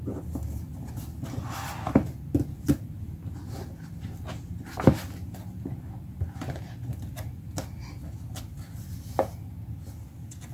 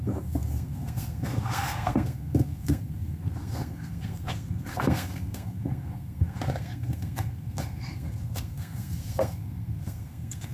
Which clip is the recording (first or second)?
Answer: first